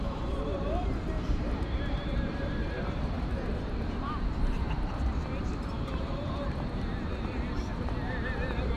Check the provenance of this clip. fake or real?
fake